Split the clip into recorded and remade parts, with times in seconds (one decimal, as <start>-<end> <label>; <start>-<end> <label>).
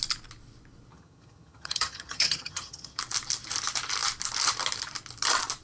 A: 0.0-0.9 recorded; 0.9-3.0 remade; 3.0-5.6 recorded